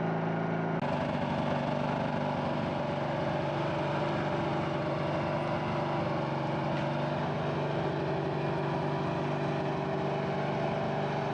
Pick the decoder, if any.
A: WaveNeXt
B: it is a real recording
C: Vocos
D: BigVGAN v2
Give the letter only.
B